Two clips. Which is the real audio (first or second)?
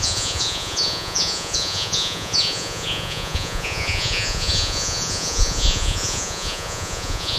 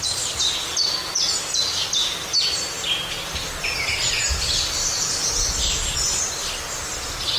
second